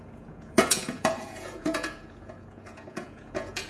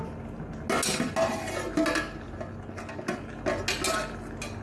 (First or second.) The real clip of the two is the second